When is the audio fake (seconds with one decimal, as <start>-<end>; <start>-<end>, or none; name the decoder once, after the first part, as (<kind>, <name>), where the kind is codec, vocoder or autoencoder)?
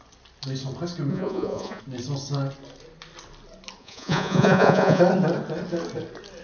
1.1-1.8 (vocoder, Vocos); 3.8-5.0